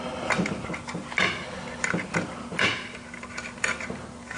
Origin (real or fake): real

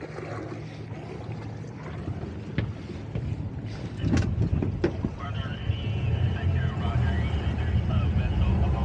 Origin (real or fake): real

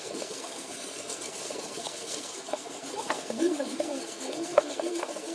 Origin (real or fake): fake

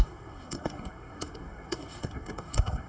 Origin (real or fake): fake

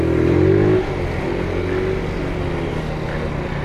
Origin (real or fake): real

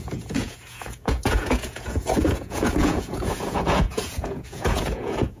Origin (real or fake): fake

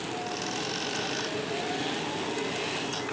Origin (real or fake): real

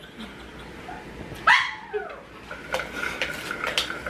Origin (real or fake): real